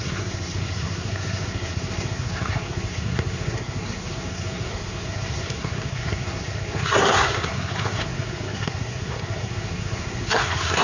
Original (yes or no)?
no